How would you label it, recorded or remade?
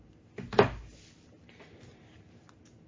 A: recorded